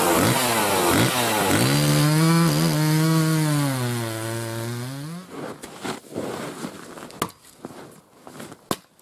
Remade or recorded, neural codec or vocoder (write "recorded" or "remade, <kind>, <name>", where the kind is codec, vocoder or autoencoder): recorded